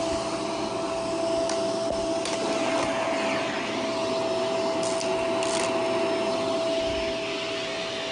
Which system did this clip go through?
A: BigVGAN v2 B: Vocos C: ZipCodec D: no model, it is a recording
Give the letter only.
D